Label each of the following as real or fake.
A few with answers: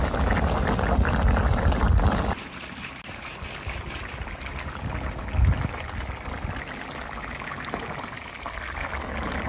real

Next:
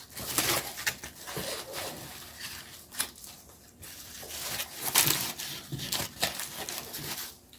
real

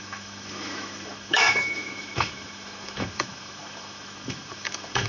fake